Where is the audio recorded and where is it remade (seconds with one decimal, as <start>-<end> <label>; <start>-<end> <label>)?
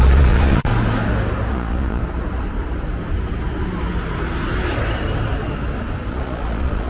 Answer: 0.0-0.7 remade; 0.7-1.5 recorded; 1.5-2.0 remade; 2.0-6.1 recorded; 6.1-6.9 remade